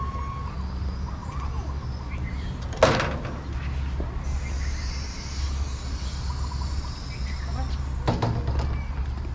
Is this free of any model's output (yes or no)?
yes